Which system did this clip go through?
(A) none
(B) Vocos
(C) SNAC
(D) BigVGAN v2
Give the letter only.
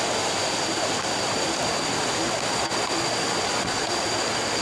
A